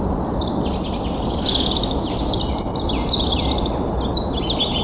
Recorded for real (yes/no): yes